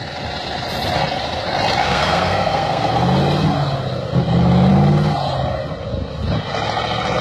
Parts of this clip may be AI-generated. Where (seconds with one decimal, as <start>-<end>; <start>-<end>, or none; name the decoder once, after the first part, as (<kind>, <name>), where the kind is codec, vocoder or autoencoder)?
1.8-2.9 (codec, SNAC)